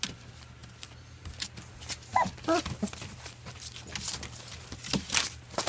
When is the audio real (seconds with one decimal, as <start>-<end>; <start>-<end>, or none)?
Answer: 0.0-5.7